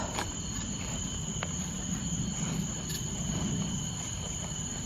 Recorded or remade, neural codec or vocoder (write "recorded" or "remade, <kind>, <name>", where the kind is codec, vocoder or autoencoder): recorded